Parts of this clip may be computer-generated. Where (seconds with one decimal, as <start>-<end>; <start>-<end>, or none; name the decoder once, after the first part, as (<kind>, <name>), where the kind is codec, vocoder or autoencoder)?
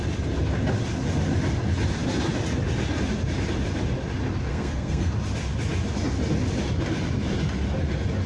4.5-5.1 (codec, SNAC)